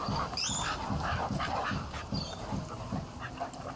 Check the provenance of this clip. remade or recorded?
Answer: recorded